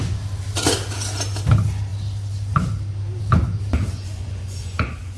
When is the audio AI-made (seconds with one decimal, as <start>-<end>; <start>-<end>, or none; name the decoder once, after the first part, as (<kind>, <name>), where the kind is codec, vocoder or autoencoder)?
3.9-5.2 (vocoder, Vocos)